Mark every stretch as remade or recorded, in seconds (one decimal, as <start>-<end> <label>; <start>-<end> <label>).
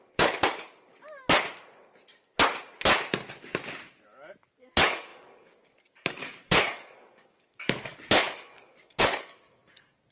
0.0-0.9 remade; 0.9-4.6 recorded; 4.6-10.1 remade